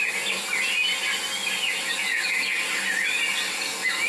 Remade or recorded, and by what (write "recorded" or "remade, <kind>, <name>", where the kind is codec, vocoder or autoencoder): recorded